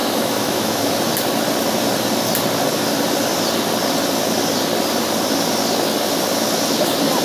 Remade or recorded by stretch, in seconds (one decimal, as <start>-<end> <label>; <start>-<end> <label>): 0.0-0.9 remade; 0.9-7.2 recorded